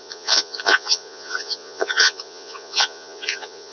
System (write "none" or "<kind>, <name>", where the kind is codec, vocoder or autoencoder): vocoder, Vocos